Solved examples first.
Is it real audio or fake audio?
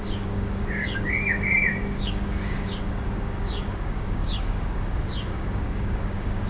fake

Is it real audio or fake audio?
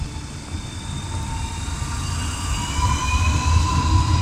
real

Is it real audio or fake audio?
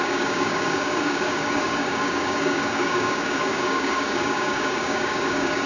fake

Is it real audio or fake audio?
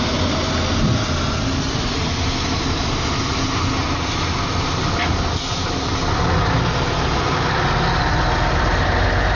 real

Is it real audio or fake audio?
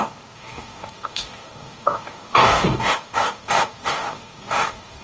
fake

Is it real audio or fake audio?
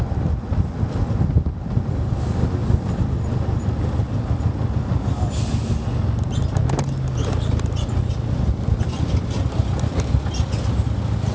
real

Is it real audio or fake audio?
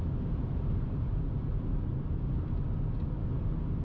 real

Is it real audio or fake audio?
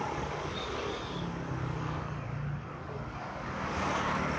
fake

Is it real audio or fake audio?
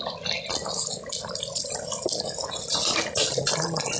real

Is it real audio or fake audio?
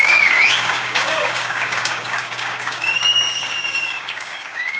fake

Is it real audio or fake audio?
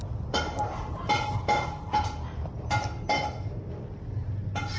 real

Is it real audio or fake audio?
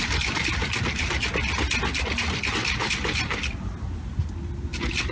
real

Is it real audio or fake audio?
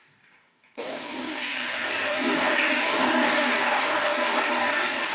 fake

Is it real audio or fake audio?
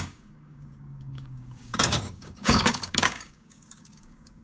fake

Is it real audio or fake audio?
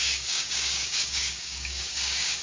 fake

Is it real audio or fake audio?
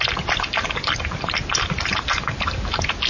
real